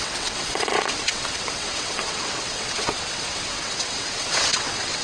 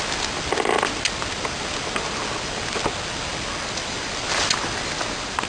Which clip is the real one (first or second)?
second